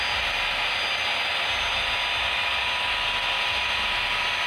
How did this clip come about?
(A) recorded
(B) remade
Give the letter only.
A